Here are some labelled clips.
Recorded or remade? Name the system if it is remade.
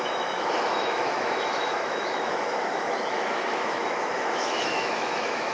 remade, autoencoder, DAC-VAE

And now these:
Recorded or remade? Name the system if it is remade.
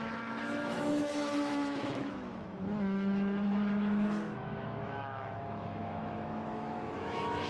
remade, autoencoder, DAC-VAE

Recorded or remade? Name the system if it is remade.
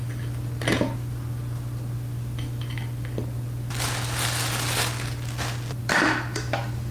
recorded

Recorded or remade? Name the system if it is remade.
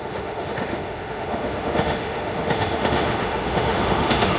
remade, autoencoder, DAC-VAE